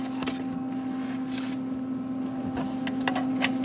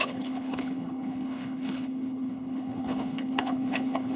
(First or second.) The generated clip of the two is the second